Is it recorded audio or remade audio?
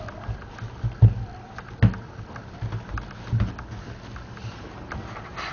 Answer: recorded